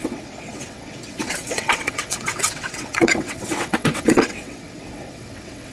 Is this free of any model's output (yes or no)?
no